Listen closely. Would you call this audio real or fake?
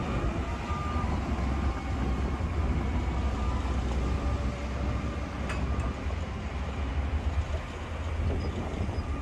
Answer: real